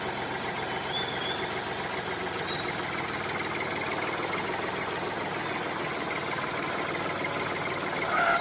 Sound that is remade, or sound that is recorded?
recorded